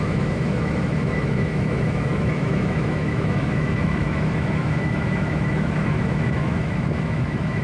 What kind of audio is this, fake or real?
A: fake